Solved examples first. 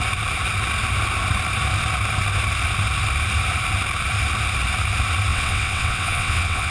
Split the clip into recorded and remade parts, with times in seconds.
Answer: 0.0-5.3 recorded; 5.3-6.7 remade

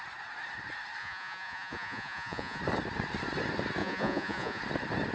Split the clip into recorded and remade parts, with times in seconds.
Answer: 0.0-1.0 recorded; 1.0-2.6 remade; 2.6-3.8 recorded; 3.8-4.6 remade; 4.6-5.1 recorded

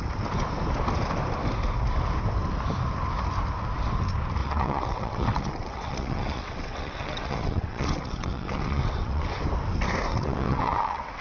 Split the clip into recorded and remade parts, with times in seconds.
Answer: 0.0-4.4 recorded; 4.4-9.4 remade; 9.4-10.1 recorded; 10.1-11.2 remade

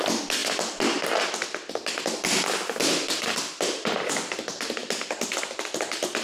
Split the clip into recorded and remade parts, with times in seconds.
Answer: 0.0-6.2 recorded

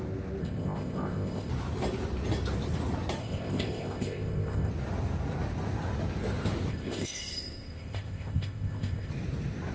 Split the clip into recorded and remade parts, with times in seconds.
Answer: 0.0-0.4 recorded; 0.4-1.5 remade; 1.5-3.2 recorded; 3.2-4.7 remade; 4.7-6.7 recorded; 6.7-9.1 remade; 9.1-9.7 recorded